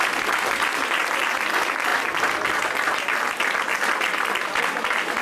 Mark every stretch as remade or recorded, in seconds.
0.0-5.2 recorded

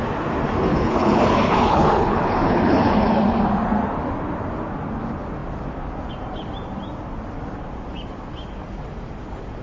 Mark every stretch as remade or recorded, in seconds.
0.0-0.7 recorded; 0.7-3.4 remade; 3.4-9.6 recorded

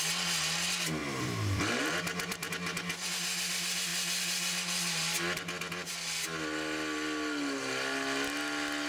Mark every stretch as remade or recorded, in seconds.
0.0-1.0 recorded; 1.0-2.5 remade; 2.5-8.9 recorded

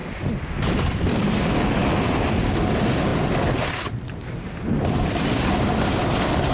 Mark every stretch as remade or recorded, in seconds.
0.0-1.4 remade; 1.4-3.1 recorded; 3.1-3.6 remade; 3.6-6.5 recorded

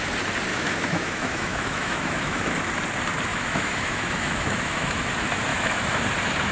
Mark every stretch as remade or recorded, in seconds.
0.0-0.5 recorded; 0.5-2.5 remade; 2.5-3.3 recorded; 3.3-5.0 remade; 5.0-5.5 recorded; 5.5-6.0 remade; 6.0-6.5 recorded